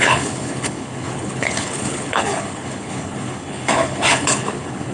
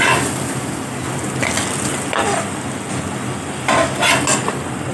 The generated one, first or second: first